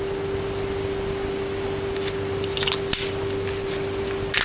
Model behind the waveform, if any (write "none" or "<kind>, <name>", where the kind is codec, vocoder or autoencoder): none